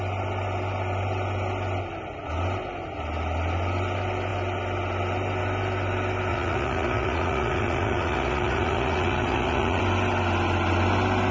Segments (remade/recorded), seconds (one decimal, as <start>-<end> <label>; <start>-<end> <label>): 0.0-6.3 recorded; 6.3-9.8 remade; 9.8-11.3 recorded